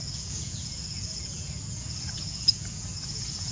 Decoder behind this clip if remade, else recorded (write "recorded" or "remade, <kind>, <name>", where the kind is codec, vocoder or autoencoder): remade, vocoder, Vocos